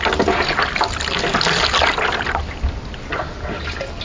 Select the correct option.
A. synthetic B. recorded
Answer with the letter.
B